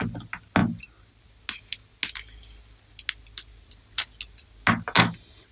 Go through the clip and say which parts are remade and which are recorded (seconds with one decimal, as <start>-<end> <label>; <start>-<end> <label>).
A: 0.0-5.5 recorded